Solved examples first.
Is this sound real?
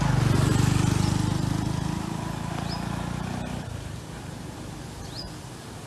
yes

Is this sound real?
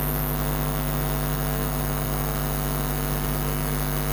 yes